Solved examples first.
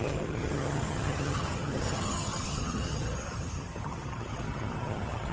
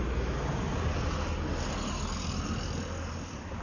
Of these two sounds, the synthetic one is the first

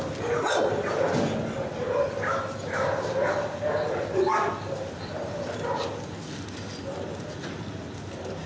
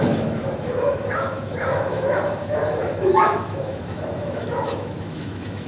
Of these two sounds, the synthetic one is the second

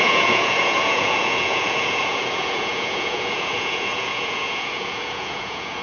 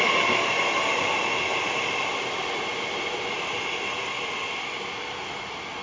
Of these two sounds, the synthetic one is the first